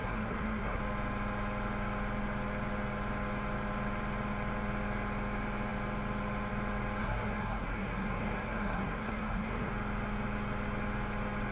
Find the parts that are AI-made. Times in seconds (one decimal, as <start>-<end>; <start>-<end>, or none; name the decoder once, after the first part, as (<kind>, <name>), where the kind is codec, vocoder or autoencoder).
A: 0.0-0.8 (codec, SNAC); 7.0-9.7